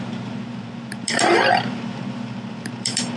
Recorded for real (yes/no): no